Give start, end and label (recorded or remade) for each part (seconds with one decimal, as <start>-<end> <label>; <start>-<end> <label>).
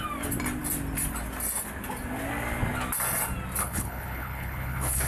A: 0.0-3.6 recorded; 3.6-5.1 remade